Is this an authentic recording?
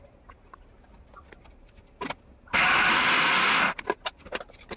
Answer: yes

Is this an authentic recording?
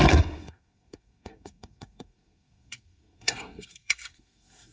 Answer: no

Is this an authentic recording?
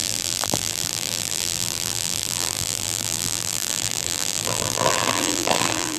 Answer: no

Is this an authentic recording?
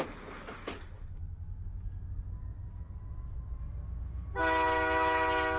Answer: yes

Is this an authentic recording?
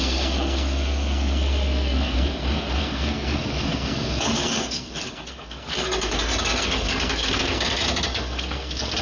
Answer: no